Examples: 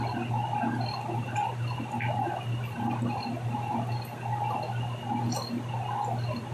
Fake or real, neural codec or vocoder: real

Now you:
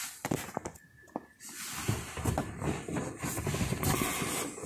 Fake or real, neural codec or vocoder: real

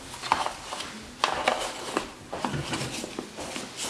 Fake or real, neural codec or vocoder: real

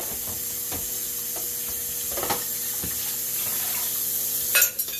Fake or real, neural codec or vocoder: real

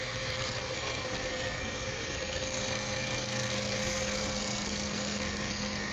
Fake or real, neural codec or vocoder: fake, codec, SNAC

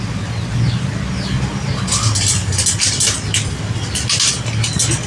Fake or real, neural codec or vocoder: real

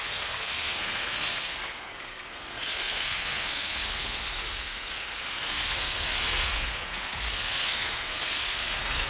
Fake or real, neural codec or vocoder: fake, codec, SNAC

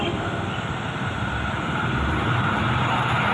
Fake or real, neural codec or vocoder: real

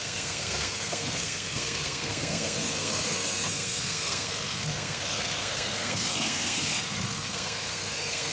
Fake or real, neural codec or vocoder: fake, codec, SNAC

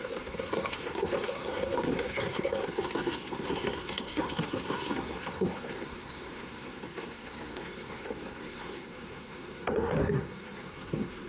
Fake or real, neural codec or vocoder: fake, codec, SNAC